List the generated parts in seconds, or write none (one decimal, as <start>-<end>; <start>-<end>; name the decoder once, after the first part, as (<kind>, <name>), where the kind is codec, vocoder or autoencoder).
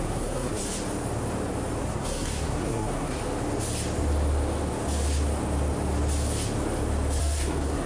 0.0-0.6 (codec, SNAC); 1.8-3.2; 7.2-7.9